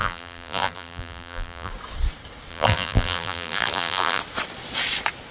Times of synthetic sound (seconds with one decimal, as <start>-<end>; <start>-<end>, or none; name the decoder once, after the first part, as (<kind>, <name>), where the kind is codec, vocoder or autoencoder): 0.0-1.7 (vocoder, BigVGAN v2); 2.5-4.2